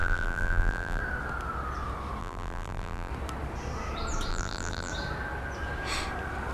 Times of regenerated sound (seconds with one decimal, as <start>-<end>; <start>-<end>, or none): 0.0-1.0; 2.2-3.1; 4.3-4.9